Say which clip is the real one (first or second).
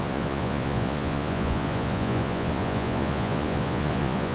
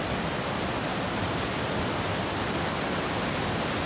second